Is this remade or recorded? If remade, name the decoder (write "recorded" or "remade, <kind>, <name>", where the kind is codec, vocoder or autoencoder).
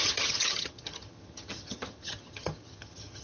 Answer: remade, vocoder, HiFi-GAN